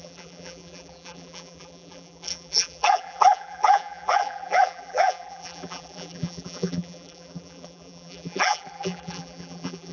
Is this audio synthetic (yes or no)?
yes